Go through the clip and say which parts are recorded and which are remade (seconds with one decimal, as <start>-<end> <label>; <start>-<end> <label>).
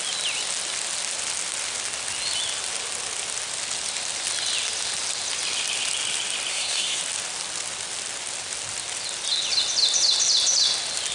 0.0-6.5 recorded; 6.5-7.0 remade; 7.0-11.1 recorded